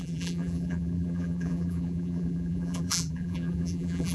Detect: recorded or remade remade